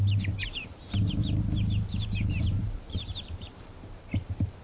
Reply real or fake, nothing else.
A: fake